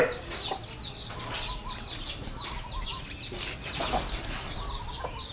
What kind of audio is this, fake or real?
real